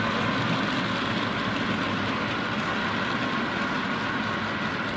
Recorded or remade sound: recorded